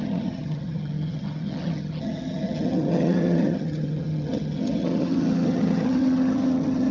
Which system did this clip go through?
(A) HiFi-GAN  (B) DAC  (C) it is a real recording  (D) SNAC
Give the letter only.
A